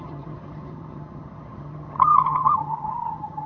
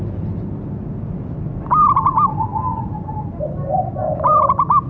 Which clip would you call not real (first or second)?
first